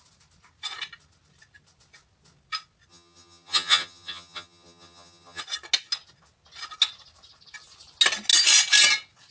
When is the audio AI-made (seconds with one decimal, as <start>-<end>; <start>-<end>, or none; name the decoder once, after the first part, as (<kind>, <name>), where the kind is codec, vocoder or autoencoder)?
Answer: 2.9-5.4 (vocoder, HiFi-GAN)